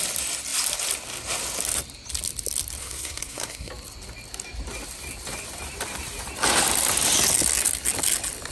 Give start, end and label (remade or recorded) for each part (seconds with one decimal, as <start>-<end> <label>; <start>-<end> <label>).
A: 0.0-2.8 recorded; 2.8-3.7 remade; 3.7-8.5 recorded

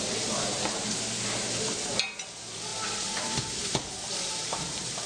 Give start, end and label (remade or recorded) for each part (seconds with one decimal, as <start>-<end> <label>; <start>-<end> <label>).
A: 0.0-3.6 recorded; 3.6-5.1 remade

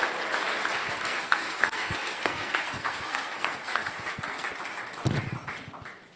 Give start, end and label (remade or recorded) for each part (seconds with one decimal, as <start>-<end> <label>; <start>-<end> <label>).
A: 0.0-0.8 recorded; 0.8-4.5 remade; 4.5-6.2 recorded

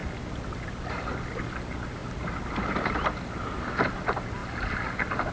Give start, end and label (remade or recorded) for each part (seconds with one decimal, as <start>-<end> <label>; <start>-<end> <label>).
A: 0.0-5.3 recorded